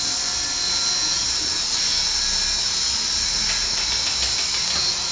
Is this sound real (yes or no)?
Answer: yes